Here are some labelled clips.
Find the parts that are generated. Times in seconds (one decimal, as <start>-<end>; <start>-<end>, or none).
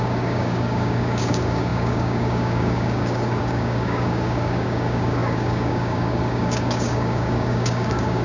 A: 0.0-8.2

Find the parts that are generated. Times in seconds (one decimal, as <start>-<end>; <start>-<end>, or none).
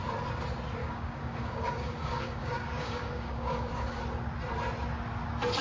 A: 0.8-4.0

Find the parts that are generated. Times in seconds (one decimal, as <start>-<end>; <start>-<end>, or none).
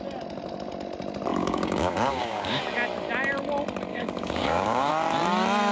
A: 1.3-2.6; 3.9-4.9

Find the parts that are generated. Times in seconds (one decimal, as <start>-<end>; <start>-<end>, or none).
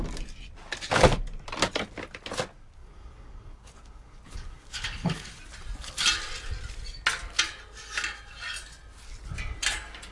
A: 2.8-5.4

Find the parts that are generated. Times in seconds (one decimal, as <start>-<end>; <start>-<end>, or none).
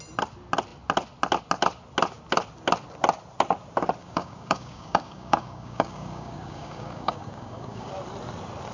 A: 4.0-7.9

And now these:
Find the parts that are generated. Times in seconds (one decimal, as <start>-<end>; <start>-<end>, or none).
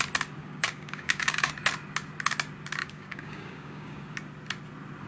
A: 0.4-1.5; 2.8-4.0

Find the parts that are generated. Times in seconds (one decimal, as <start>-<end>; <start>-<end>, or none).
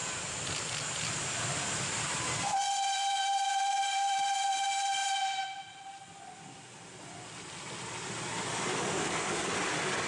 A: 8.7-9.5